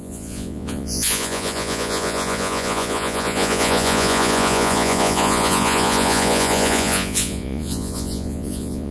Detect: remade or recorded remade